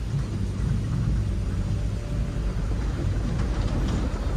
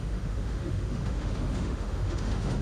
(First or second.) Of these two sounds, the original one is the first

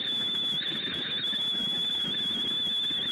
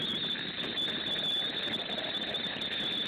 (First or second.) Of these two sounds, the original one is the second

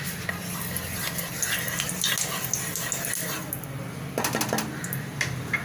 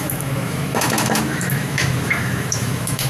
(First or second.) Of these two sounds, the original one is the first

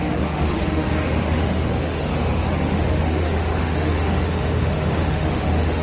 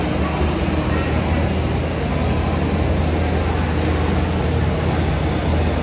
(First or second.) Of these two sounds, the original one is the second